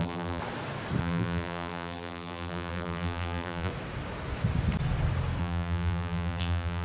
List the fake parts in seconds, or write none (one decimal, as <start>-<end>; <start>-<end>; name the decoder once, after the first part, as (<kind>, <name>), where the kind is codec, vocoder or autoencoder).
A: 0.0-0.4 (vocoder, BigVGAN v2); 1.0-3.7; 5.4-6.8